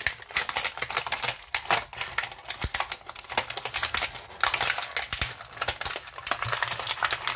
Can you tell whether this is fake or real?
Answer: real